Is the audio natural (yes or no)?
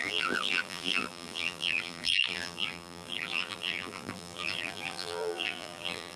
no